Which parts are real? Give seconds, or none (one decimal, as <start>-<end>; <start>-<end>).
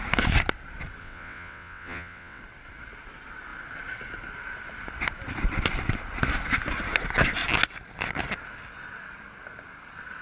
0.0-1.0; 2.4-10.2